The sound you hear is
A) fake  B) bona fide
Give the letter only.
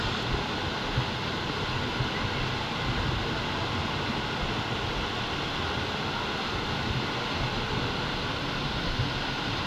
B